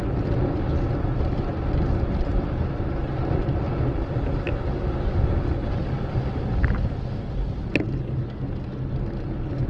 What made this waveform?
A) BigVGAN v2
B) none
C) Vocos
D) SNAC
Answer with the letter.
B